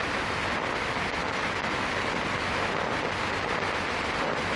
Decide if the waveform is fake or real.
fake